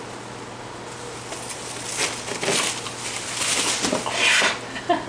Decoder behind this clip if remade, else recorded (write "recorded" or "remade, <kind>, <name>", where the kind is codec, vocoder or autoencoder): recorded